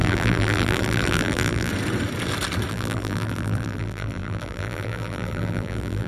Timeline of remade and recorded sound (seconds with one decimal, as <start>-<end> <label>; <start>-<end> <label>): 0.0-1.7 remade; 1.7-2.7 recorded; 2.7-6.1 remade